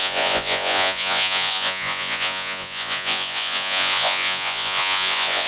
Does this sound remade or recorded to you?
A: remade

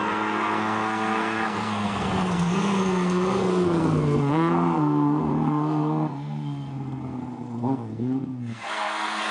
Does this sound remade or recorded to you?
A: remade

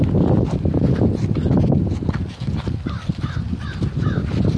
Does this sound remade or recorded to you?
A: recorded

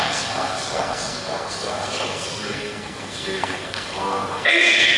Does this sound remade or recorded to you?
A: remade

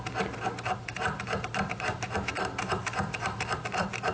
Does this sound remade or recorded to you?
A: recorded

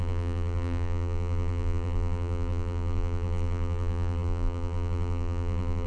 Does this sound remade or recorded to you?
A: remade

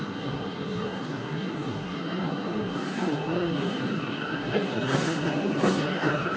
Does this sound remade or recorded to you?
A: remade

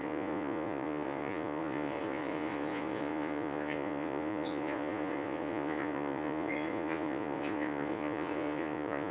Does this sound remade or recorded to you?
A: remade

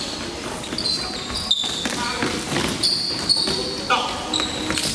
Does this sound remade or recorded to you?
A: recorded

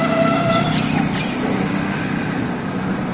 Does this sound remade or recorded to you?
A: recorded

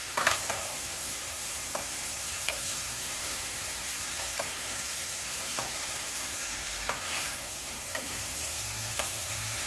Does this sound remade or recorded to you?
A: remade